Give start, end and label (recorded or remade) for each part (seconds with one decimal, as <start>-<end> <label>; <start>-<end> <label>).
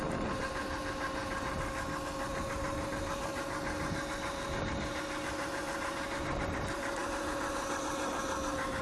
0.0-8.8 recorded